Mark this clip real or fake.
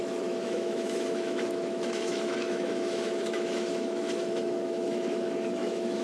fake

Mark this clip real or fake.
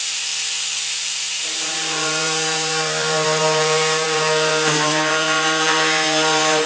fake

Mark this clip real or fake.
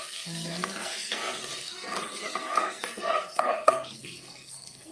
fake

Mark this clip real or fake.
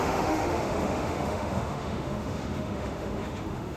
fake